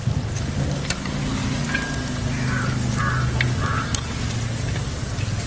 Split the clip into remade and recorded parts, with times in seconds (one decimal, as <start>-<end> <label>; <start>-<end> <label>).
0.0-5.5 recorded